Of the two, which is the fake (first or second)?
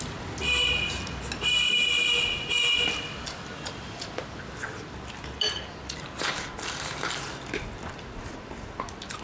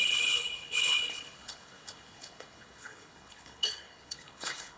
second